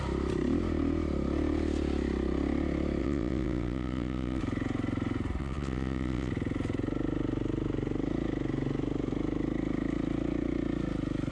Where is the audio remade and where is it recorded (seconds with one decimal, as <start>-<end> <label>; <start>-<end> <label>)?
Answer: 0.0-3.0 recorded; 3.0-4.4 remade; 4.4-5.4 recorded; 5.4-6.3 remade; 6.3-11.3 recorded

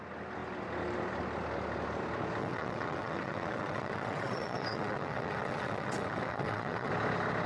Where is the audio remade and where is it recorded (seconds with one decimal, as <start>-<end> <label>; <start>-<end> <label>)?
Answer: 0.0-2.4 recorded; 2.4-6.9 remade; 6.9-7.5 recorded

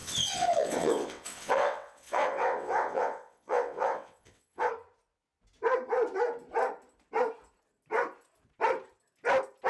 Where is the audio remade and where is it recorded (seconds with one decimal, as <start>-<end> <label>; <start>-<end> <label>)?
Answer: 0.0-4.7 remade; 4.7-9.7 recorded

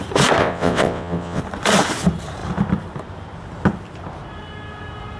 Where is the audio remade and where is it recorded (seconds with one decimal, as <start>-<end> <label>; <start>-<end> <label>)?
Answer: 0.0-0.4 recorded; 0.4-1.4 remade; 1.4-5.2 recorded

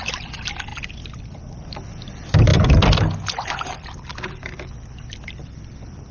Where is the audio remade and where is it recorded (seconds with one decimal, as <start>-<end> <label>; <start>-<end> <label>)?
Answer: 0.0-6.1 recorded

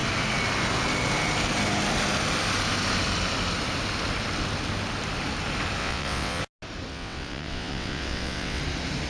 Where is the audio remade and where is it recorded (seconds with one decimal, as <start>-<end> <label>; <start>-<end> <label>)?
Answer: 0.0-5.8 recorded; 5.8-6.4 remade; 6.4-6.9 recorded; 6.9-8.6 remade; 8.6-9.1 recorded

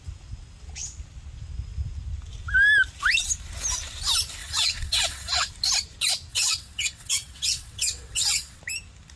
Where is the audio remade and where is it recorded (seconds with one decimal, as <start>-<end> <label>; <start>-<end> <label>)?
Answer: 0.0-4.4 recorded; 4.4-5.5 remade; 5.5-6.3 recorded; 6.3-8.6 remade; 8.6-9.2 recorded

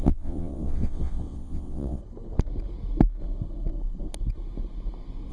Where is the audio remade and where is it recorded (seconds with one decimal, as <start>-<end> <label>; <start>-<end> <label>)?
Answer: 0.0-2.0 remade; 2.0-5.3 recorded